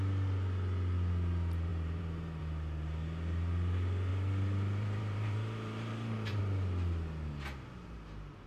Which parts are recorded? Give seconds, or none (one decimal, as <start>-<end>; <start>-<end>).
0.0-1.7; 2.4-4.1; 6.4-8.5